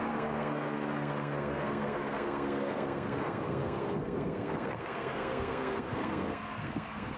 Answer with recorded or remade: remade